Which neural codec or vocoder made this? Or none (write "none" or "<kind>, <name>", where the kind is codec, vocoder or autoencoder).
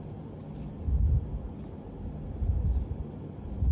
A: none